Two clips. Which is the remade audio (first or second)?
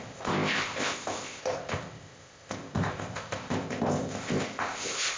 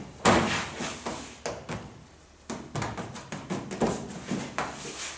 first